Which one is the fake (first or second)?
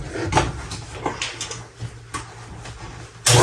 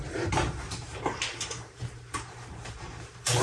second